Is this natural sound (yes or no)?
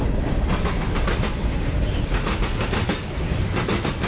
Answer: yes